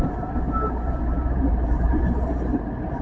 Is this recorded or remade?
remade